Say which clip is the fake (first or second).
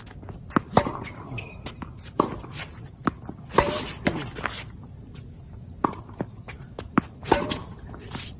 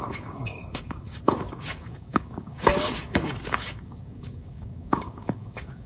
second